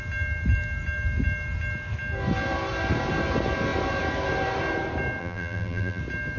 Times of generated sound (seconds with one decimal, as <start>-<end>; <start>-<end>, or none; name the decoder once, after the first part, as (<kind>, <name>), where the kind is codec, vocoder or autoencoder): 5.2-6.0 (vocoder, BigVGAN v2)

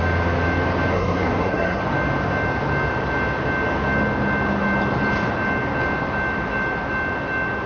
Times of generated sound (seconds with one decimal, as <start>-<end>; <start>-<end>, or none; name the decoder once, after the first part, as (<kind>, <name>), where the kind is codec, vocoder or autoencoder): 0.9-1.8 (codec, SNAC)

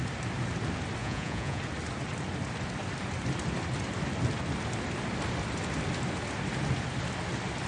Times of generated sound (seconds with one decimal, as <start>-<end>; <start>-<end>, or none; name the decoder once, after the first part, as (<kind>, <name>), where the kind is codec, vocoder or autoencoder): 1.0-1.6 (vocoder, Vocos)

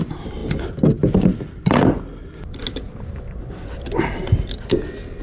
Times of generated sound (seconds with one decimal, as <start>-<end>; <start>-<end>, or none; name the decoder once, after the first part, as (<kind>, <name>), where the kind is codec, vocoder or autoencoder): none

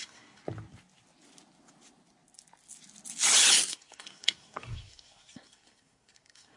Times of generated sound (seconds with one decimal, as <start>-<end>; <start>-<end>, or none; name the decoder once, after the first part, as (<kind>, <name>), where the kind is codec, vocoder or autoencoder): 0.0-0.4 (codec, SNAC); 3.7-6.6

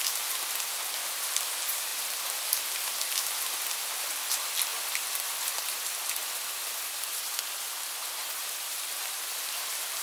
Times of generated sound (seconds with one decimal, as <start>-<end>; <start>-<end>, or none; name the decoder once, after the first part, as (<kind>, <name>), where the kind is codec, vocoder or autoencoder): 4.7-8.9 (vocoder, BigVGAN v2)

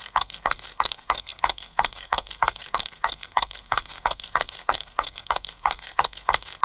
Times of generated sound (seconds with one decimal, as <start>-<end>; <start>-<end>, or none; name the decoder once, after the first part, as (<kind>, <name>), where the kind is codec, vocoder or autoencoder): 0.0-6.6 (codec, SNAC)